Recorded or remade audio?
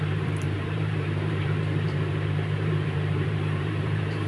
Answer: remade